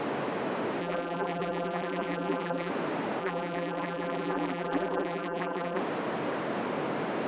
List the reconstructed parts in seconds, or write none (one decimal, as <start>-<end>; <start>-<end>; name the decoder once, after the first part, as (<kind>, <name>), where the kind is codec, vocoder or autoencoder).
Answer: 0.8-2.7 (vocoder, BigVGAN v2); 3.2-5.8